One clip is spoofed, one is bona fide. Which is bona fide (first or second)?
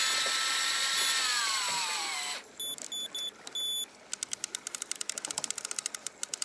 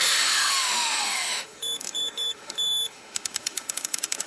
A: first